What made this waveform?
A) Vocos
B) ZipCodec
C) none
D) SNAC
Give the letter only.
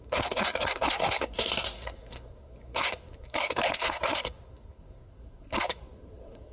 D